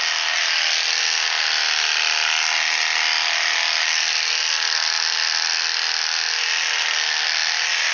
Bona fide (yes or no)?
yes